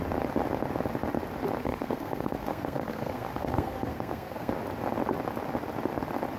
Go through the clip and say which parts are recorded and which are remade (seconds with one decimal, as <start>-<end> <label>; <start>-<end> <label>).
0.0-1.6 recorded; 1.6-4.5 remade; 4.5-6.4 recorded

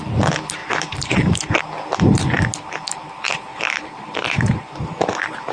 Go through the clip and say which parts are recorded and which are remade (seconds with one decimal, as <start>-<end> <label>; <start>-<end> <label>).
0.0-0.6 recorded; 0.6-1.6 remade; 1.6-3.5 recorded; 3.5-4.8 remade; 4.8-5.5 recorded

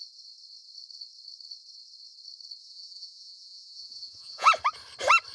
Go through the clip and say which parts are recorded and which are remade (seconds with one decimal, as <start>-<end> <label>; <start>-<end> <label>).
0.0-2.6 recorded; 2.6-4.5 remade; 4.5-5.3 recorded